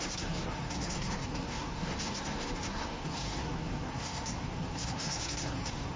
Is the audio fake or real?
fake